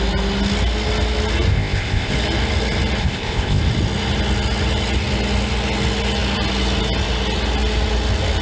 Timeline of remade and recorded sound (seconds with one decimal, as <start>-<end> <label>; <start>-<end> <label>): 0.0-1.5 recorded; 1.5-2.1 remade; 2.1-3.0 recorded; 3.0-3.6 remade; 3.6-8.4 recorded